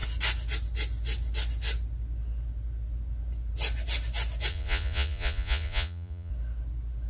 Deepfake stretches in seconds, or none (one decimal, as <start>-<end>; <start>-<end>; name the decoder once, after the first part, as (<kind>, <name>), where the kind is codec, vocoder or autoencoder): 4.5-6.3 (vocoder, Vocos)